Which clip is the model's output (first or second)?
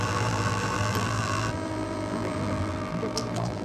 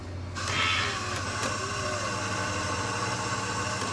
first